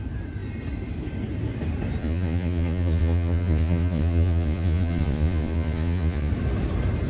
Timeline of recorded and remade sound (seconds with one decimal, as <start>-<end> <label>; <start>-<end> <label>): 0.0-2.0 recorded; 2.0-6.3 remade; 6.3-7.1 recorded